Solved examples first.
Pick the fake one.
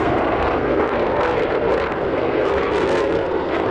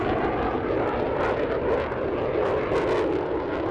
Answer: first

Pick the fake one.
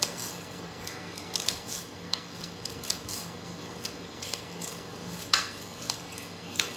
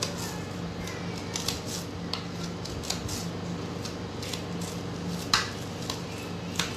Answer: first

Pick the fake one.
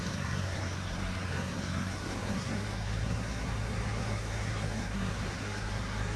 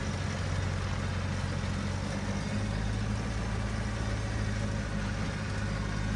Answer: first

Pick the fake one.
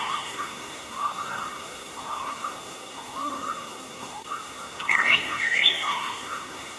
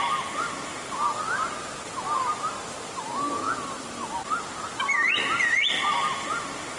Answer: first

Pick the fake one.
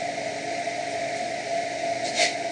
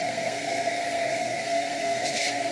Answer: second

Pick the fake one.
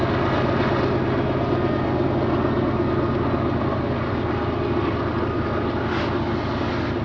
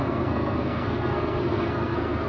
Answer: second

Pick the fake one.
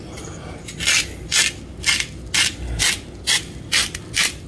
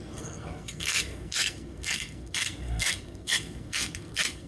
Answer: second